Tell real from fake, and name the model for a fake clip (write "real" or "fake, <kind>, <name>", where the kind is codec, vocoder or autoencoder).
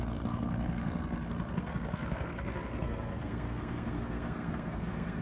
fake, codec, SNAC